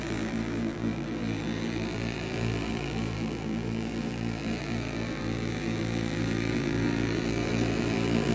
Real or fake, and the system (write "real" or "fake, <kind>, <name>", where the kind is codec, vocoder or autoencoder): fake, vocoder, BigVGAN v2